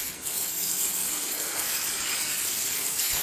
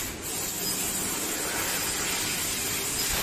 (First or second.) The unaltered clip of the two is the second